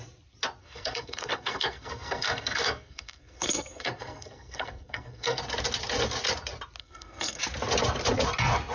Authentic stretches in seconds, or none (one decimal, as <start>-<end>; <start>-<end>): 0.0-0.6; 5.4-6.8; 7.4-8.7

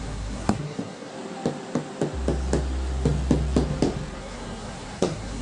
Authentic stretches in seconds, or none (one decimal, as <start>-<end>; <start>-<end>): 1.1-4.2